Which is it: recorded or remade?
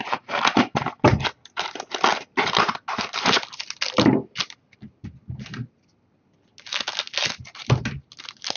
recorded